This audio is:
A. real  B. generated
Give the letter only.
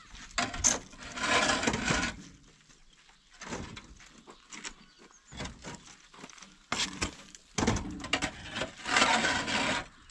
A